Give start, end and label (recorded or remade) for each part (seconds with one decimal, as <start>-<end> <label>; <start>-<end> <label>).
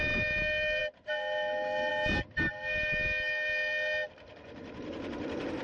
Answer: 0.0-5.6 recorded